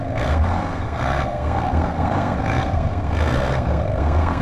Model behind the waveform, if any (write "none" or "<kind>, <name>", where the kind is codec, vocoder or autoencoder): codec, SNAC